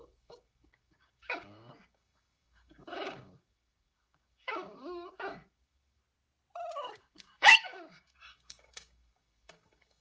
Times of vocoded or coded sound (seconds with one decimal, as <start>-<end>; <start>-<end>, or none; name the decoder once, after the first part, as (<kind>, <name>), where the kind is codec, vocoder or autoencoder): 0.0-6.0 (codec, DAC); 7.0-10.0